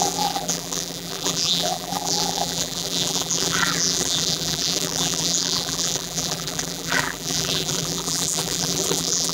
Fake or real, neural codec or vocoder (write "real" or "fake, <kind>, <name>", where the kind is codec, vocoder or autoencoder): fake, vocoder, BigVGAN v2